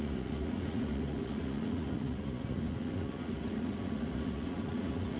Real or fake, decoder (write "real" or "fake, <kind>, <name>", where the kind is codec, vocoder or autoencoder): fake, vocoder, Vocos